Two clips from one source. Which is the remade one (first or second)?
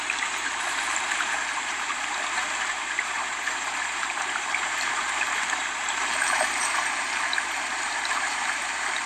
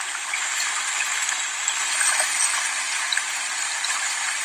first